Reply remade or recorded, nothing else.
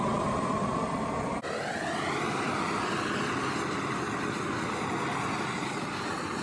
recorded